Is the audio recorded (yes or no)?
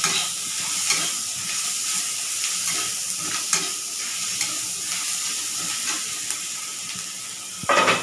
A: yes